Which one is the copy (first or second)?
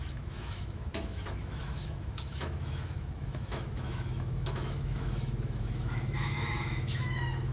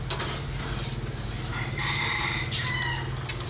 first